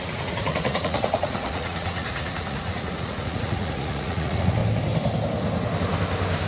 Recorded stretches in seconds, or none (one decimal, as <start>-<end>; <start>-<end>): 4.6-6.5

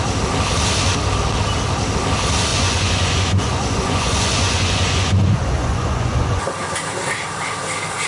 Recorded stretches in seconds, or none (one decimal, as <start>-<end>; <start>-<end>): 0.0-2.5; 6.4-8.1